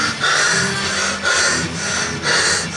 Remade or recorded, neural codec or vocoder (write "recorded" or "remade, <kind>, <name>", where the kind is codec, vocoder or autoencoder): recorded